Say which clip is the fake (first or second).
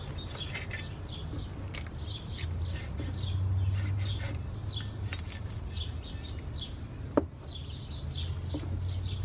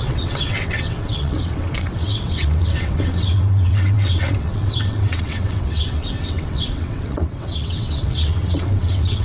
second